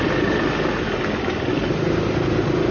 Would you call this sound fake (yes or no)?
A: no